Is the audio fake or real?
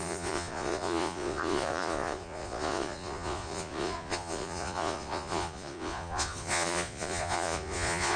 fake